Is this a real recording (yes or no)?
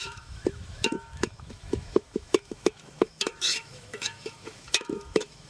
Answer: no